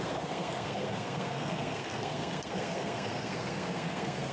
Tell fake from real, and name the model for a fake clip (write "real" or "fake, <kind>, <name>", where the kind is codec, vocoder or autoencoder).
fake, codec, SNAC